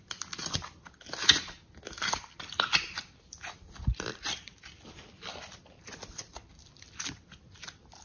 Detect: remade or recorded remade